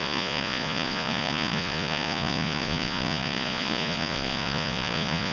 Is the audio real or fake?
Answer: fake